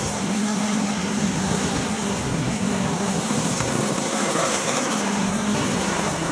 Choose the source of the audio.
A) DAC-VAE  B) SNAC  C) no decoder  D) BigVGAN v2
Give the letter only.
B